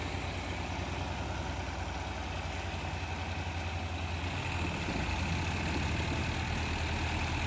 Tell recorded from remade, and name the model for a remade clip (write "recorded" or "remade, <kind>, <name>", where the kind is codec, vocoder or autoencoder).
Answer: recorded